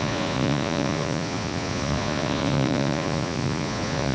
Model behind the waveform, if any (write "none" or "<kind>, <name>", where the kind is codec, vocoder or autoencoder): vocoder, Vocos